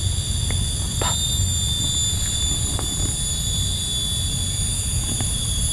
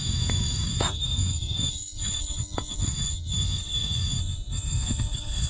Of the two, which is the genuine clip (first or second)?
first